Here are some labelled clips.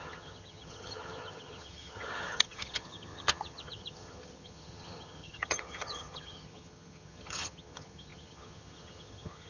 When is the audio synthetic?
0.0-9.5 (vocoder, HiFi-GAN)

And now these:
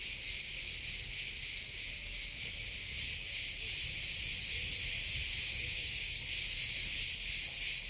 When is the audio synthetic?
5.5-6.2 (codec, DAC)

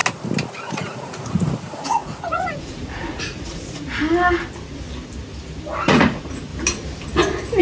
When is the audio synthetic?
0.7-4.0 (vocoder, Vocos); 5.8-6.5